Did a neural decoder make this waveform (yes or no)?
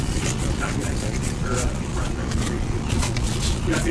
yes